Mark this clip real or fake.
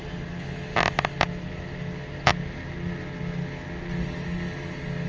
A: real